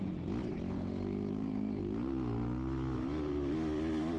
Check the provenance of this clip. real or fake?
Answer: real